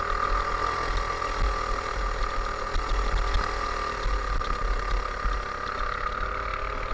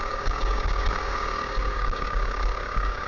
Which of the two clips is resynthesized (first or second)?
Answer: second